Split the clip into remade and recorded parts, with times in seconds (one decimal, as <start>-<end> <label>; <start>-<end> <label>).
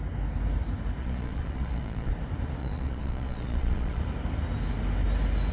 0.0-1.0 recorded; 1.0-2.1 remade; 2.1-2.6 recorded; 2.6-4.0 remade; 4.0-5.5 recorded